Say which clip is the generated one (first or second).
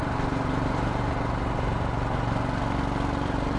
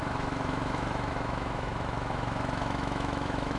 second